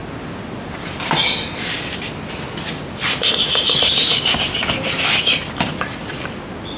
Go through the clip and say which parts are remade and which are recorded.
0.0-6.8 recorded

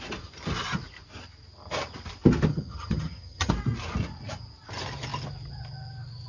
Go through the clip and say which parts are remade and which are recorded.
0.0-2.5 recorded; 2.5-3.5 remade; 3.5-6.3 recorded

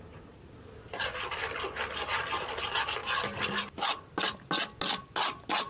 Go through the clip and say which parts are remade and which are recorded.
0.0-5.7 recorded

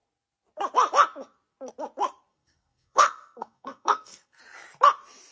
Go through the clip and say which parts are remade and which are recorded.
0.0-2.3 recorded; 2.3-4.4 remade; 4.4-5.3 recorded

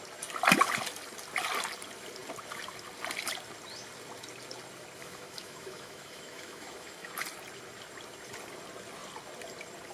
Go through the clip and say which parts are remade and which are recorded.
0.0-5.0 recorded; 5.0-7.1 remade; 7.1-9.9 recorded

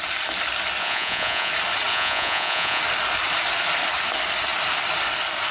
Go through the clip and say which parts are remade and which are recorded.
0.0-0.8 recorded; 0.8-1.5 remade; 1.5-1.9 recorded; 1.9-2.8 remade; 2.8-5.5 recorded

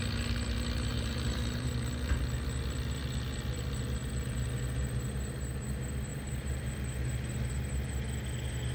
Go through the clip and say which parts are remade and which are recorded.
0.0-0.9 recorded; 0.9-1.7 remade; 1.7-6.1 recorded; 6.1-6.7 remade; 6.7-8.7 recorded

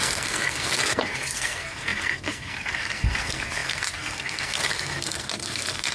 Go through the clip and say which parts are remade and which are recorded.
0.0-5.9 remade